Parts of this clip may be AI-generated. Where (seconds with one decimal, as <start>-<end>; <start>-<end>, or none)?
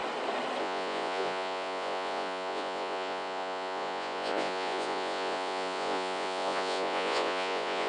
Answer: 0.6-7.9